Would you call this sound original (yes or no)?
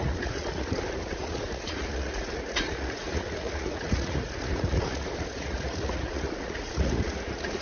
no